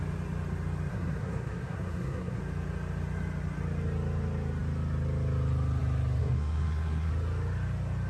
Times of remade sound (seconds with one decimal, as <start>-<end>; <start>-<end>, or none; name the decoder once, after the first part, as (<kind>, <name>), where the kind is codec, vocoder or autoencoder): 0.9-2.4 (codec, SNAC); 6.2-7.1